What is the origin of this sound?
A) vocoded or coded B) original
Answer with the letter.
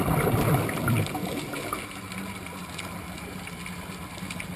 B